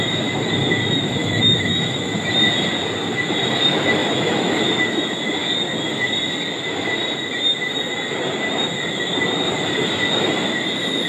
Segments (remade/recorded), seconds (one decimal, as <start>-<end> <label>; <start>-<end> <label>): 0.0-1.2 recorded; 1.2-2.2 remade; 2.2-4.0 recorded; 4.0-4.6 remade; 4.6-11.1 recorded